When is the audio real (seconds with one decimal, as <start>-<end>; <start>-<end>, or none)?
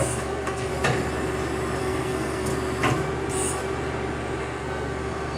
0.7-1.8; 2.5-4.4